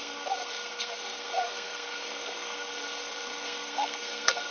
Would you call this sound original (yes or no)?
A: no